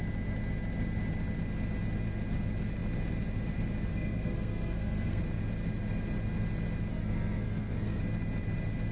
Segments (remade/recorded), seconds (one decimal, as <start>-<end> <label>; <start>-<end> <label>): 0.0-3.9 recorded; 3.9-5.2 remade; 5.2-6.9 recorded; 6.9-8.0 remade; 8.0-8.9 recorded